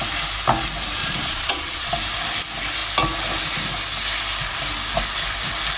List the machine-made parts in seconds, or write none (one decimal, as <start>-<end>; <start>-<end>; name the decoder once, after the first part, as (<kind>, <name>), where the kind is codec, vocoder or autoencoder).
1.0-1.9 (vocoder, Vocos)